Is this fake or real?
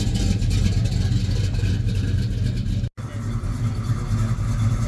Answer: real